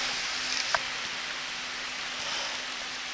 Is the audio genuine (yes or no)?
yes